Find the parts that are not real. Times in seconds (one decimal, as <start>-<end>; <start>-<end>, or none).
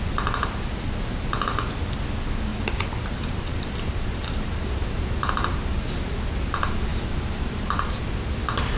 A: 2.5-5.0; 6.9-8.1